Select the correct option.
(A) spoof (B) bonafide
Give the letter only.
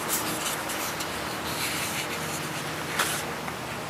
B